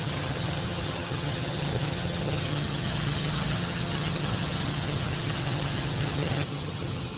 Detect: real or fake fake